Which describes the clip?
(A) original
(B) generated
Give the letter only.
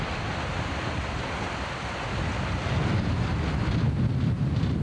A